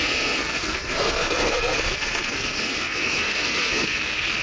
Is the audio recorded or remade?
remade